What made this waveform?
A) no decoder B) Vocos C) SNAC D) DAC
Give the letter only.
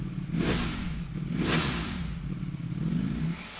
A